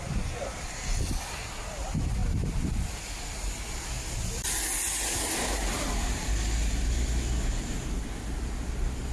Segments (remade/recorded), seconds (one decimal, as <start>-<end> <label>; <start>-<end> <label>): 0.0-9.1 recorded